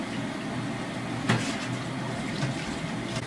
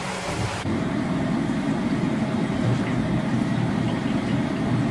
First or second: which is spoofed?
second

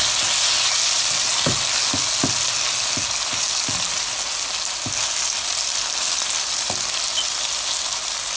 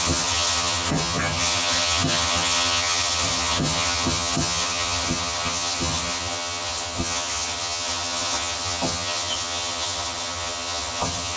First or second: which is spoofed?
second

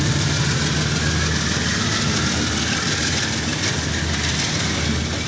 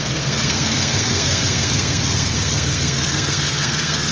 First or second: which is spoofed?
second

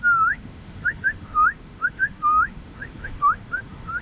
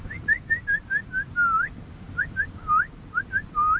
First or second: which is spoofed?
first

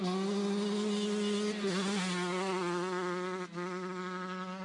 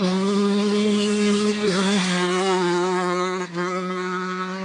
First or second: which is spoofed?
second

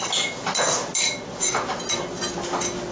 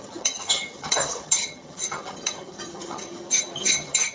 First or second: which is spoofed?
second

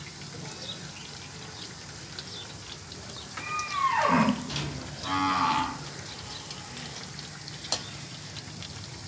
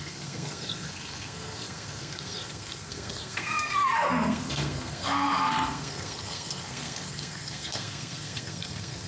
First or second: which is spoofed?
second